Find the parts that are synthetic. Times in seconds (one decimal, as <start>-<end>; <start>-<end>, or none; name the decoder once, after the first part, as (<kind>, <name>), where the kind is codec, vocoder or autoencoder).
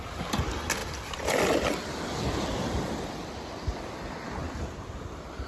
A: 0.8-3.9 (vocoder, BigVGAN v2)